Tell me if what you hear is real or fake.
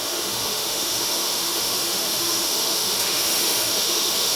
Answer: fake